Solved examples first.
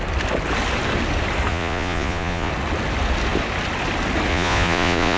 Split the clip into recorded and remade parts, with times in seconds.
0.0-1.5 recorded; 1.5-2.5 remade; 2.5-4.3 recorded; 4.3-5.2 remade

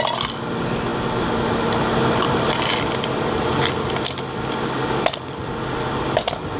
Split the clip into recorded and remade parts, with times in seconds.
0.0-6.6 recorded

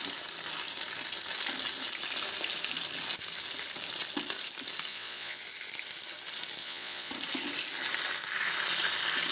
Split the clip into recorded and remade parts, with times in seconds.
0.0-4.9 recorded; 4.9-5.4 remade; 5.4-6.6 recorded; 6.6-7.1 remade; 7.1-9.3 recorded

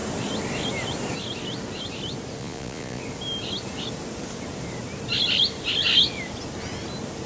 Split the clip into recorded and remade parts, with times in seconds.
0.0-2.4 recorded; 2.4-3.0 remade; 3.0-7.3 recorded